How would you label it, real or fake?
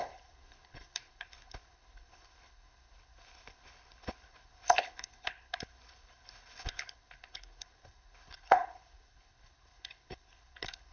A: fake